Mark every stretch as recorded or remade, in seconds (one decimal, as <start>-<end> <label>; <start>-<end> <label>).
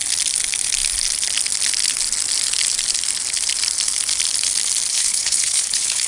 0.0-4.9 recorded; 4.9-6.1 remade